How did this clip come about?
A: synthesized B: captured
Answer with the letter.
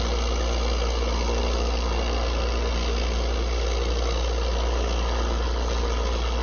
B